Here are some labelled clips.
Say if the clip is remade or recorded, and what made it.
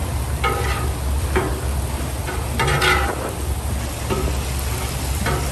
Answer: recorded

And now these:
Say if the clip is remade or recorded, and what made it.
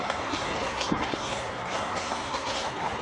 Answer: remade, codec, SNAC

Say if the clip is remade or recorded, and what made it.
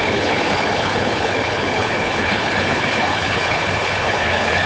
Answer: remade, codec, HILCodec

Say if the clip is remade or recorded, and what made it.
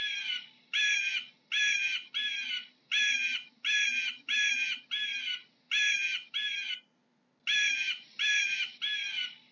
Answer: recorded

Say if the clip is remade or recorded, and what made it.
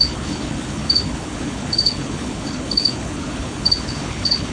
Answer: remade, codec, HILCodec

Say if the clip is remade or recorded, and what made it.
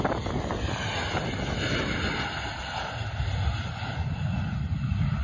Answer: recorded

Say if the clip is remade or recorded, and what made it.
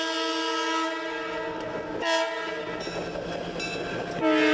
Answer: recorded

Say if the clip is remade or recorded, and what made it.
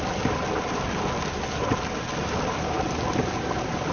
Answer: recorded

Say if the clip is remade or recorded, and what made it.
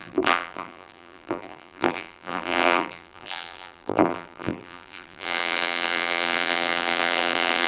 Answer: remade, vocoder, BigVGAN v2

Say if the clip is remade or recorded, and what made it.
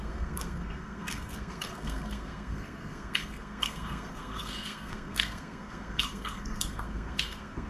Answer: remade, codec, SNAC